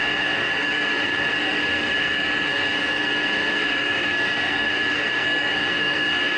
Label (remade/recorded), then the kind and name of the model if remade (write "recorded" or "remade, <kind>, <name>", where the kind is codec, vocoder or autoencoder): remade, codec, SNAC